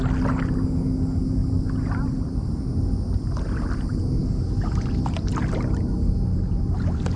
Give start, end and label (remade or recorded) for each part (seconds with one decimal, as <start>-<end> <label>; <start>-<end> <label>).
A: 0.0-7.2 recorded